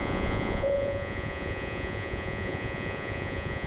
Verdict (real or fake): fake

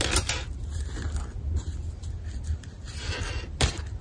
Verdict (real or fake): real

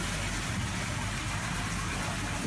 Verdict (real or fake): real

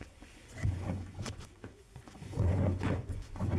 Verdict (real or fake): fake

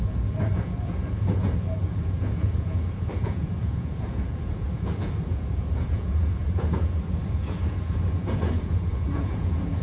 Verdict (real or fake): fake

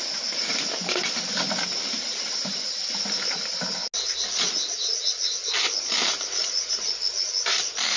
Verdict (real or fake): real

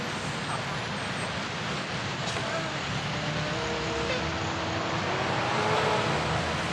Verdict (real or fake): real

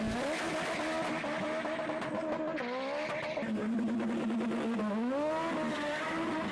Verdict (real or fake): real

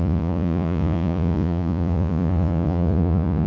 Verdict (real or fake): fake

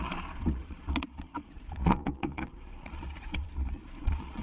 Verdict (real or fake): fake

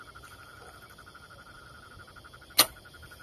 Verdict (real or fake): real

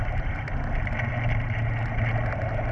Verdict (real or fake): real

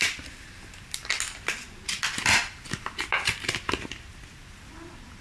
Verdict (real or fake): real